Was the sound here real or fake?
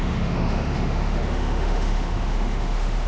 fake